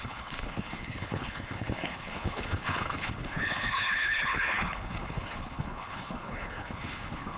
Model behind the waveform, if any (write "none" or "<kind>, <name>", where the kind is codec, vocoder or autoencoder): codec, HILCodec